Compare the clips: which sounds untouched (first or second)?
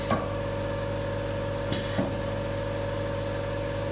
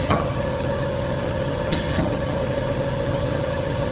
first